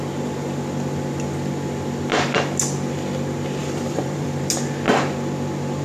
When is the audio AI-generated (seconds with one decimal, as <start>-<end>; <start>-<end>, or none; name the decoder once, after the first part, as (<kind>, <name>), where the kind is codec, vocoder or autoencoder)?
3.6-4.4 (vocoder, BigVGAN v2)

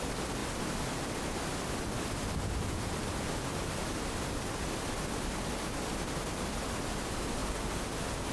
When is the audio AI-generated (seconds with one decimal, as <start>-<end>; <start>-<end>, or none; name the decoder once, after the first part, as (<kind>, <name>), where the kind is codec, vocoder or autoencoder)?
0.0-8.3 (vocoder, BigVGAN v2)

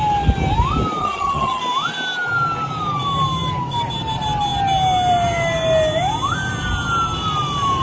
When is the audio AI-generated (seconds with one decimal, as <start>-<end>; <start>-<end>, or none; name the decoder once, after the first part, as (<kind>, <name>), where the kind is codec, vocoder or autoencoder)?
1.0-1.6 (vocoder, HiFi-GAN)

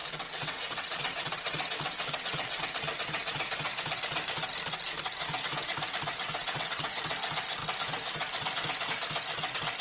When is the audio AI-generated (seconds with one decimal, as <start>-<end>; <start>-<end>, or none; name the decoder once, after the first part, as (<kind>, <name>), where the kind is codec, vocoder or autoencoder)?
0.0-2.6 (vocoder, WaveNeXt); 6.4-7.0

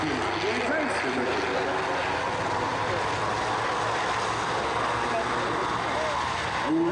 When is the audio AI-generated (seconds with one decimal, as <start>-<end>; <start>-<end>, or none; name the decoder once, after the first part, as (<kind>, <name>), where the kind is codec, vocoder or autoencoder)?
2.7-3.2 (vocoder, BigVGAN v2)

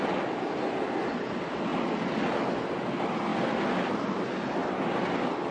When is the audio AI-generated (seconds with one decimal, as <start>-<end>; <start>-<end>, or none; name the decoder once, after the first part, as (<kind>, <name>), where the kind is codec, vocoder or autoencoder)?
1.7-2.2 (vocoder, BigVGAN v2); 3.3-4.1; 4.6-5.1

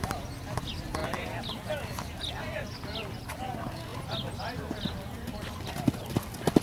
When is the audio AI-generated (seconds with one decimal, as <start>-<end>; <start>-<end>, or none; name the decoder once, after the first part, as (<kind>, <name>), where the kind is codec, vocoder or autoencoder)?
none

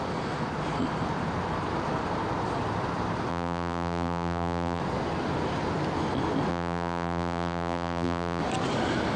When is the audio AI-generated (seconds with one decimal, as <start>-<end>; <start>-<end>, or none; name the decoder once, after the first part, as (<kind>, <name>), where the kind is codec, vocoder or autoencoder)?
3.3-4.8 (vocoder, BigVGAN v2); 6.5-8.4